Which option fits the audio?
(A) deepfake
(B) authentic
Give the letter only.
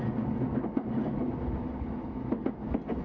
B